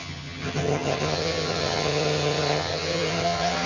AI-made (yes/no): yes